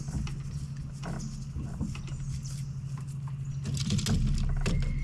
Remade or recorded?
recorded